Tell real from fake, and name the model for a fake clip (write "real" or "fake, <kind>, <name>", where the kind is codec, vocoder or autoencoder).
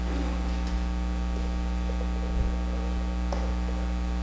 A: real